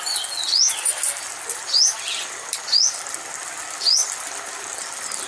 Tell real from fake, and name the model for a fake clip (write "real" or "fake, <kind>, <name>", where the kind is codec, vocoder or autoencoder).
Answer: real